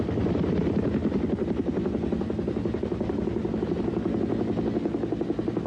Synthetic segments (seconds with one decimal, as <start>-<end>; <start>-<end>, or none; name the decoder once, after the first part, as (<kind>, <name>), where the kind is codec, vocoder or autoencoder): none